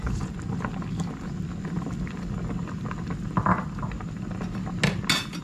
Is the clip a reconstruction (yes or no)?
no